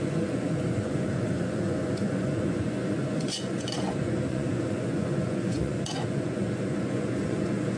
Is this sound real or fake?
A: fake